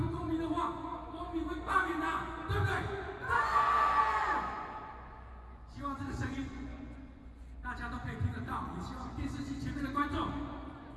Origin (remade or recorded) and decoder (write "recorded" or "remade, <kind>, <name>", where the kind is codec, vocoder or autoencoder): remade, vocoder, Vocos